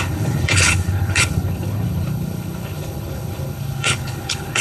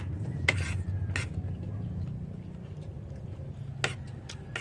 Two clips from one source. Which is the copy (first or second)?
first